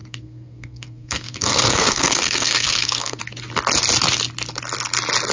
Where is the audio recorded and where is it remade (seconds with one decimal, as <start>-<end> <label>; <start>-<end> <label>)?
0.0-3.2 remade; 3.2-5.3 recorded